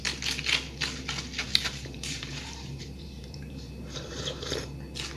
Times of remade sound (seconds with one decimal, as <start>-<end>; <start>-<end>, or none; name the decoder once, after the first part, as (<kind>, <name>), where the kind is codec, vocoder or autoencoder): 1.4-4.5 (vocoder, BigVGAN v2)